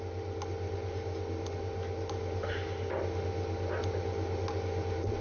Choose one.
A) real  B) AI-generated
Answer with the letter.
A